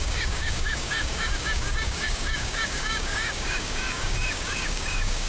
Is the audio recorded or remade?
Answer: remade